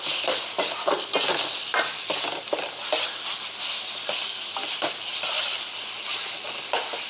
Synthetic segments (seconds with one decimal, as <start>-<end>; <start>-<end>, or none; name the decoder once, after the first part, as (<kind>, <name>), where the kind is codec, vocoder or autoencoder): none

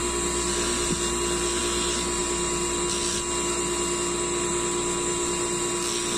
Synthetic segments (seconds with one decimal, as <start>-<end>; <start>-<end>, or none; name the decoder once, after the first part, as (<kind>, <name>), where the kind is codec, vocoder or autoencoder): none